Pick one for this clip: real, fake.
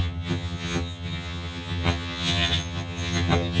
fake